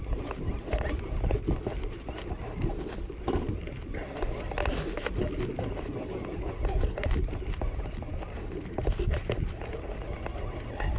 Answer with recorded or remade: recorded